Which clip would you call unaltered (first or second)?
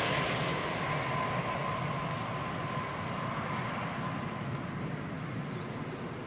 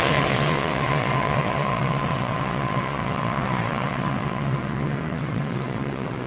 first